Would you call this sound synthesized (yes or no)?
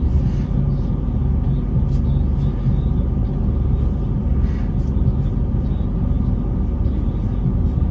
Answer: no